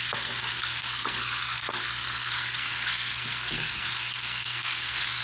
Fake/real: fake